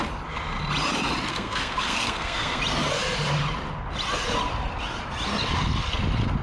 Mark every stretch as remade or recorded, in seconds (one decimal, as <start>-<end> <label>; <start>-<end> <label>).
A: 0.0-1.3 recorded; 1.3-2.6 remade; 2.6-6.4 recorded